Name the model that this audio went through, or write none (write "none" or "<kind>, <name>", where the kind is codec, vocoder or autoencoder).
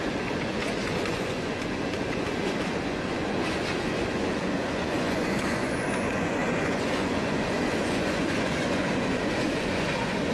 vocoder, Vocos